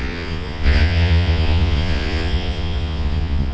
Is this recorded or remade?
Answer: remade